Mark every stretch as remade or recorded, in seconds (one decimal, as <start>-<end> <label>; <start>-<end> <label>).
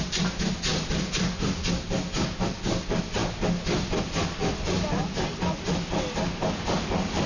0.0-7.3 recorded